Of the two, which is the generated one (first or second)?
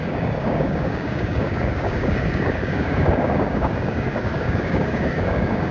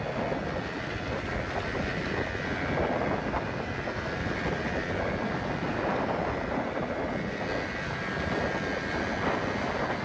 first